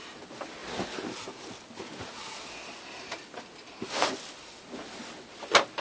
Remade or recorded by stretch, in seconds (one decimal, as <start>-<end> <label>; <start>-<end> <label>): 0.0-5.8 recorded

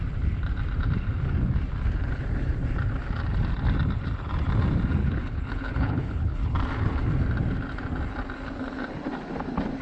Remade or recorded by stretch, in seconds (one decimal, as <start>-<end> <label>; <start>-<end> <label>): 0.0-5.0 recorded; 5.0-6.4 remade; 6.4-9.8 recorded